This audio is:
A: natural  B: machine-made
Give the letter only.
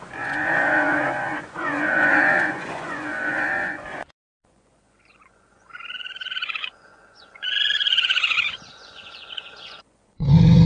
B